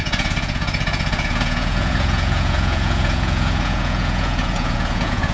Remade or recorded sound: remade